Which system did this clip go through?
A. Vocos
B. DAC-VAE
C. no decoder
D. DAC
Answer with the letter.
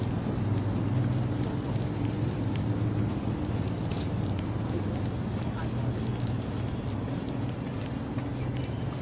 C